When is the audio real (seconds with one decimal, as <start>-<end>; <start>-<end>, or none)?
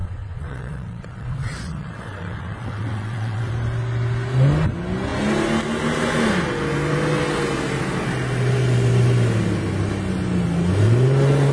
3.5-11.5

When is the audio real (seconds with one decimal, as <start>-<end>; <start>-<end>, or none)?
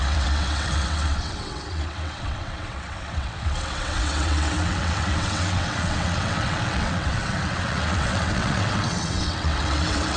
none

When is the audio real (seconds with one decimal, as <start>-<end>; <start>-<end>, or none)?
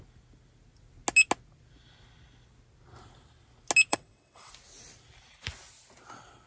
0.0-3.9; 4.5-6.5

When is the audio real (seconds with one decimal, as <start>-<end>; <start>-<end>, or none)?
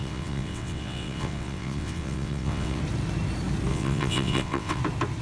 2.8-3.7; 4.8-5.2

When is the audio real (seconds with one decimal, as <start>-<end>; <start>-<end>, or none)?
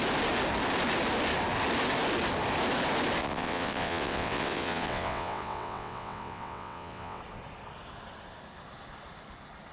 0.0-3.2; 7.2-9.7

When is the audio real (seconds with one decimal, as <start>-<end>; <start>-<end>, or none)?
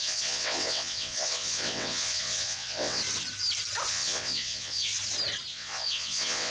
3.0-3.9; 4.9-5.5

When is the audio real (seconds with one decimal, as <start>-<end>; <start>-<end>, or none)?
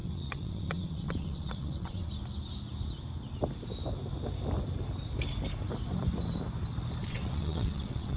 2.1-7.0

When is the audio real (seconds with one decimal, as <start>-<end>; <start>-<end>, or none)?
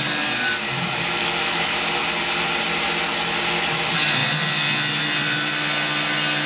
0.0-6.5